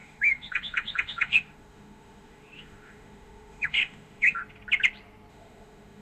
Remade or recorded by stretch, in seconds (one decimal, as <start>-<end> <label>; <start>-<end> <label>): 0.0-4.4 remade; 4.4-5.3 recorded; 5.3-6.0 remade